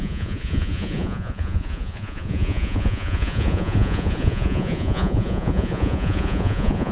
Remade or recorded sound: remade